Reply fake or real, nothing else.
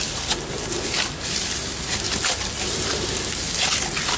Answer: real